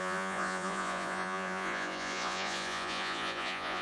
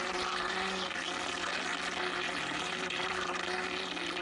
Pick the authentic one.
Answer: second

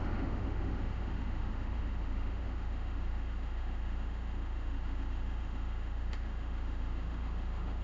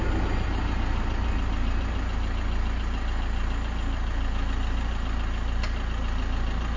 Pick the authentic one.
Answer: second